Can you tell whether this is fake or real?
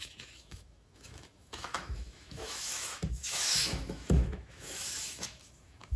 fake